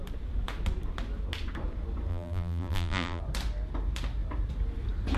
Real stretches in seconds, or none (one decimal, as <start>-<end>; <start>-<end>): 0.0-2.1; 3.2-5.2